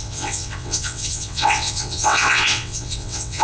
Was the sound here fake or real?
fake